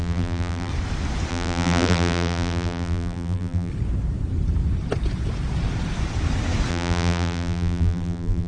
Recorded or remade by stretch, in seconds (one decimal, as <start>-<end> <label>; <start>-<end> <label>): 0.0-0.7 remade; 0.7-1.3 recorded; 1.3-3.7 remade; 3.7-6.7 recorded; 6.7-8.5 remade